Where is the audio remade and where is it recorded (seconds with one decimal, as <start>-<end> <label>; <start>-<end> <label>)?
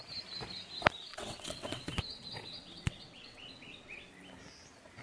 0.0-1.1 recorded; 1.1-4.1 remade; 4.1-5.0 recorded